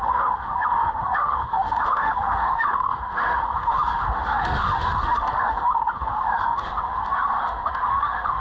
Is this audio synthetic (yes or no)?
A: yes